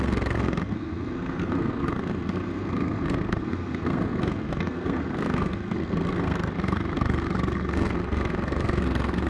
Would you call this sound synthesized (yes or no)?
yes